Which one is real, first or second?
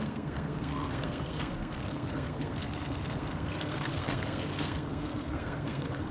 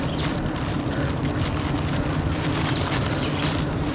second